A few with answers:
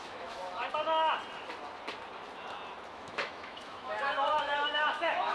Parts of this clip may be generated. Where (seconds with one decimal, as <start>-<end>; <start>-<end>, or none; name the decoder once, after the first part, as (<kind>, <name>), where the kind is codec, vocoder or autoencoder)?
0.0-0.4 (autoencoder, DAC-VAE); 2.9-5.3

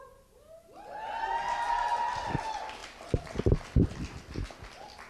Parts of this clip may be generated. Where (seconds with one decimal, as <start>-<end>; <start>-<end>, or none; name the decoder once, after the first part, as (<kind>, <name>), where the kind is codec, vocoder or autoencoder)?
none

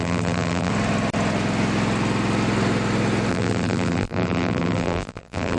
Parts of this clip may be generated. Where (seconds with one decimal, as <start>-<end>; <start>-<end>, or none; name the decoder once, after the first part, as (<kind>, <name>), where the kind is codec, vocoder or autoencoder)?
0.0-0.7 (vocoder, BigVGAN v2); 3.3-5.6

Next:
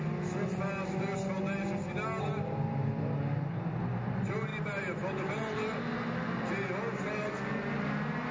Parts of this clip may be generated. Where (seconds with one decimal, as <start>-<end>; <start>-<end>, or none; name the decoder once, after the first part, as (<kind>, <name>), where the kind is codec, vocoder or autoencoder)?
none

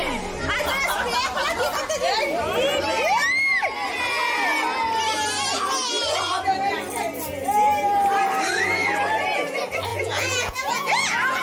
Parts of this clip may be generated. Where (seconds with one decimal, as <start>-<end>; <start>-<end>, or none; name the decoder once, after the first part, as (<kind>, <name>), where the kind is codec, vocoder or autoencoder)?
9.9-11.4 (vocoder, Vocos)

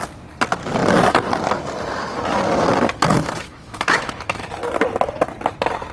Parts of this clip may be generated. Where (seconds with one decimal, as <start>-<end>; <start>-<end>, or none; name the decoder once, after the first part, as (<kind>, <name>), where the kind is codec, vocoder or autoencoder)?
3.1-4.5 (autoencoder, DAC-VAE)